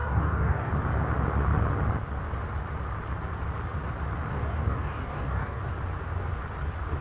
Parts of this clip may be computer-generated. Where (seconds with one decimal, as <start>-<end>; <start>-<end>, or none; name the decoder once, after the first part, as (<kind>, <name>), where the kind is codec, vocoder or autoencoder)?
0.0-0.7 (codec, DAC); 4.3-5.6